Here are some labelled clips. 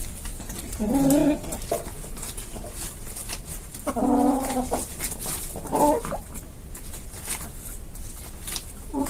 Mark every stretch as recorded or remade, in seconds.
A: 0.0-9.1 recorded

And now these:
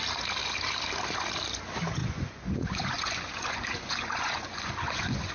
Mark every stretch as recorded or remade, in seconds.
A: 0.0-2.0 recorded; 2.0-5.3 remade

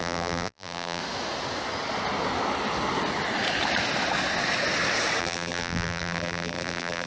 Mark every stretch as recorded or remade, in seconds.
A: 0.0-1.0 remade; 1.0-5.2 recorded; 5.2-7.1 remade

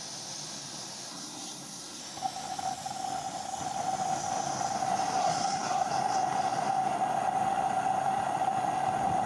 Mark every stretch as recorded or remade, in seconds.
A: 0.0-1.1 recorded; 1.1-2.0 remade; 2.0-5.2 recorded; 5.2-5.9 remade; 5.9-9.3 recorded

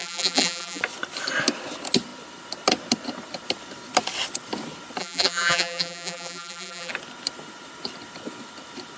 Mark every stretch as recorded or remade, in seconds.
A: 0.0-0.8 remade; 0.8-5.0 recorded; 5.0-6.9 remade; 6.9-9.0 recorded